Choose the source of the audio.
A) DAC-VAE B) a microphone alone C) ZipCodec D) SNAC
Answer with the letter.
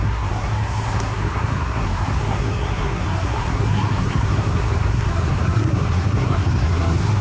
D